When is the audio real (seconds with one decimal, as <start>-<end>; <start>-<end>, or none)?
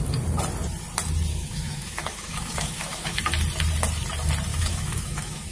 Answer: 0.0-1.3; 3.2-4.5